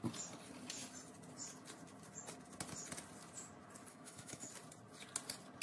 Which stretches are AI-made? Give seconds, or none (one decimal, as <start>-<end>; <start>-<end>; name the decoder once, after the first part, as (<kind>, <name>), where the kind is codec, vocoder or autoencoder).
3.9-4.5 (autoencoder, DAC-VAE)